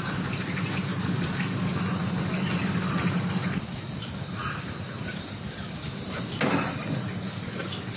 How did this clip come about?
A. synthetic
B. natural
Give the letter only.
B